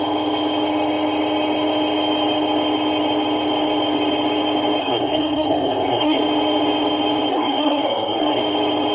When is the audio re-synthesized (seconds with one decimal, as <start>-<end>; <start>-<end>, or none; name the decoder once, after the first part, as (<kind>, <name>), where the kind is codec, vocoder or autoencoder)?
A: 4.8-6.2 (codec, SNAC); 7.3-8.4